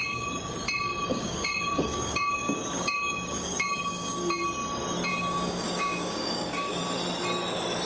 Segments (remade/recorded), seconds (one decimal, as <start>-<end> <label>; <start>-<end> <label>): 0.0-0.5 remade; 0.5-1.1 recorded; 1.1-4.2 remade; 4.2-5.1 recorded; 5.1-6.8 remade; 6.8-7.9 recorded